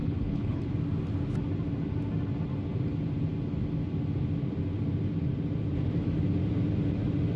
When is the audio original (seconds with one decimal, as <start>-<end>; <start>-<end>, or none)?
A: 0.6-7.4